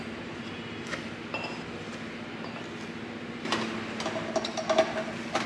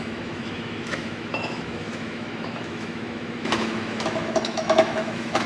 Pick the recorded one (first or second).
first